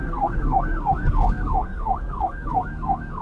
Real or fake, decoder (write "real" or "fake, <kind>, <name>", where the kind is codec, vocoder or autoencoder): fake, codec, SNAC